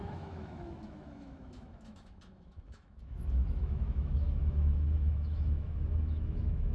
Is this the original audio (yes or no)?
no